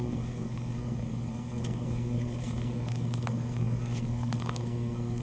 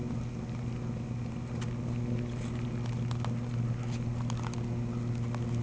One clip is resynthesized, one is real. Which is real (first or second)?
second